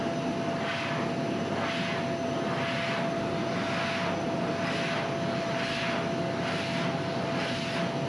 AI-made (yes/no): no